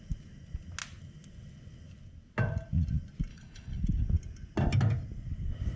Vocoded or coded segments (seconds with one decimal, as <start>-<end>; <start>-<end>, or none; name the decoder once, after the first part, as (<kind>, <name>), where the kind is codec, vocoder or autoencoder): 3.3-3.8 (codec, HILCodec)

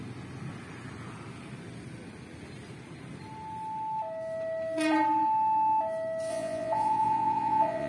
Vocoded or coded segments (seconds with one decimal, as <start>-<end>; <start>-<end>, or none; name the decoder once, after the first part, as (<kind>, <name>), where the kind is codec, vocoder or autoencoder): 6.3-7.9 (vocoder, Vocos)

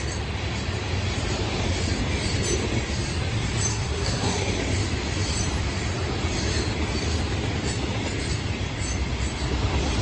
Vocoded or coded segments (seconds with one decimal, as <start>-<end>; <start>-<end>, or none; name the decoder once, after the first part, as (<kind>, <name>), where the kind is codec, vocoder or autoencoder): 3.7-4.6 (codec, SNAC)

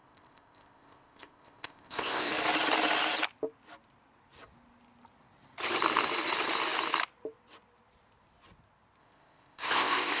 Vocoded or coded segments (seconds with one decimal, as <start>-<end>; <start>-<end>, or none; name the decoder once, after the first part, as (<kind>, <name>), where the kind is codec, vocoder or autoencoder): 0.0-2.3 (codec, ZipCodec); 9.0-10.2